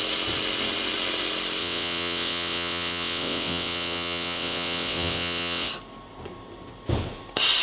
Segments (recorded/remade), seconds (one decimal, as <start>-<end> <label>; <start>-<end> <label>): 0.0-1.6 recorded; 1.6-5.7 remade; 5.7-7.6 recorded